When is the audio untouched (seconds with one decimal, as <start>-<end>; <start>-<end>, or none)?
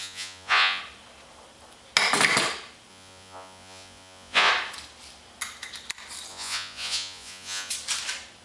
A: 0.8-2.9; 4.5-6.3; 7.7-8.4